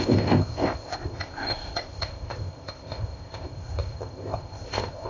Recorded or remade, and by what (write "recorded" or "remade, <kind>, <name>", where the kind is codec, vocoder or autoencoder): remade, codec, ZipCodec